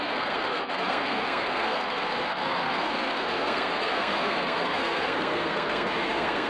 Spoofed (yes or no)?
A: yes